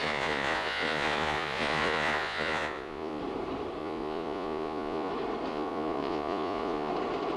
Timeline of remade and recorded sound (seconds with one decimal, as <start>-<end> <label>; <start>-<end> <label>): 0.0-3.2 remade; 3.2-3.8 recorded; 3.8-5.1 remade; 5.1-5.5 recorded; 5.5-6.9 remade; 6.9-7.4 recorded